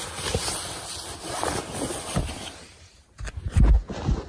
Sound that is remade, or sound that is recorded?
recorded